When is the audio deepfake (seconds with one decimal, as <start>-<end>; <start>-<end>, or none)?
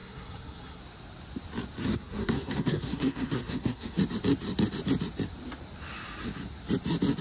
0.0-0.8; 1.8-4.0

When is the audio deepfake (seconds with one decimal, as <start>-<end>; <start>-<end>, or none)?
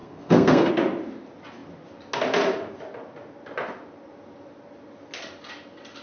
0.0-0.7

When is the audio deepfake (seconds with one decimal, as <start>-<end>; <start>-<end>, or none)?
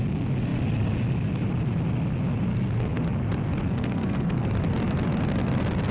2.5-3.0; 3.6-4.5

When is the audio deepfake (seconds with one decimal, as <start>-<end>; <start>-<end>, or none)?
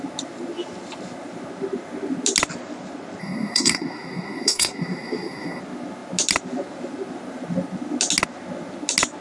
3.2-5.6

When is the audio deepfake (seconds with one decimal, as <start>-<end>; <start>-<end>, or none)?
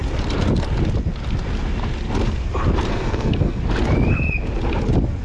2.9-3.6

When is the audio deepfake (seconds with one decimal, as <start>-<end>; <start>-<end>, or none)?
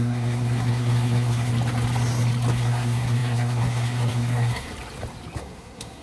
0.0-1.5; 2.5-4.7; 5.4-6.0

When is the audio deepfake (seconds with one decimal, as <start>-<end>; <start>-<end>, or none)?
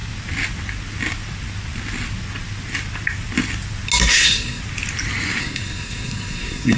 4.1-4.6; 5.4-6.8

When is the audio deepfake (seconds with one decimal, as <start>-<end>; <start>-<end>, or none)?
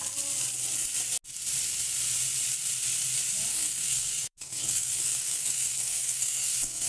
3.5-6.9